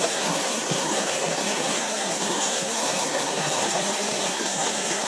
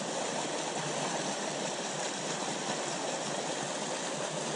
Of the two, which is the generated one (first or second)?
first